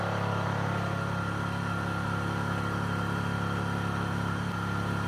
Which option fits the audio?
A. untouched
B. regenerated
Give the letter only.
A